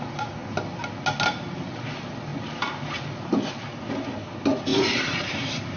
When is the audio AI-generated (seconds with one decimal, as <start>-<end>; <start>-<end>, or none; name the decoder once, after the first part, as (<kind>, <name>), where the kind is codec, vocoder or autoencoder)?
4.7-5.8 (vocoder, BigVGAN v2)